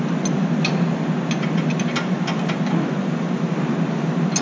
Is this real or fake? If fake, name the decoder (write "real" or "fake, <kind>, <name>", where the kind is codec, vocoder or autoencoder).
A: real